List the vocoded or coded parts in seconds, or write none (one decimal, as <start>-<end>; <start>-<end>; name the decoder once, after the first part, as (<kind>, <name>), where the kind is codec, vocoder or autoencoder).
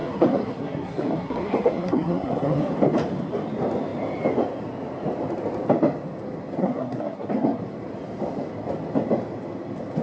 0.0-2.7 (codec, SNAC); 6.6-7.6